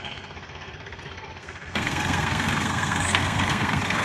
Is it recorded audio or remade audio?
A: remade